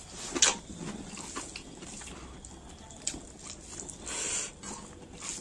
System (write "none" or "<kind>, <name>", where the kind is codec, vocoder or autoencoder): none